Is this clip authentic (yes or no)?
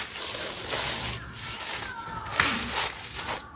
yes